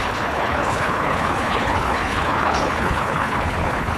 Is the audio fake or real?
fake